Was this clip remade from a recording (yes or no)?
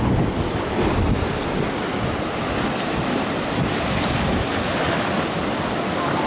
no